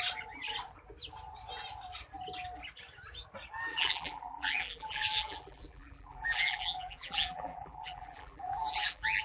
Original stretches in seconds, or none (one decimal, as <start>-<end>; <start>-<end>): 0.0-3.7